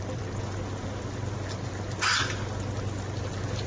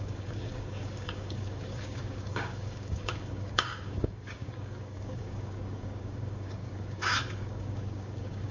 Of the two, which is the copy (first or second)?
second